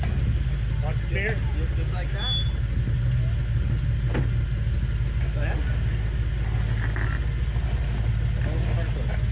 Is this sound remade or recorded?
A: recorded